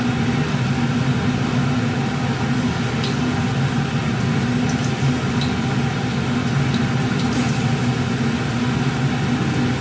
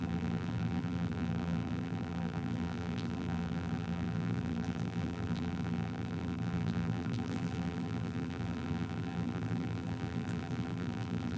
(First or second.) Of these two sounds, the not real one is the second